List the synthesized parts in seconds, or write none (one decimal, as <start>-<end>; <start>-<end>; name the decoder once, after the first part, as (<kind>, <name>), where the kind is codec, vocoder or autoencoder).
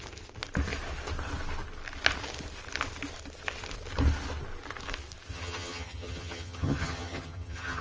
5.3-7.8 (vocoder, HiFi-GAN)